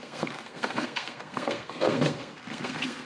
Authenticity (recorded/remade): remade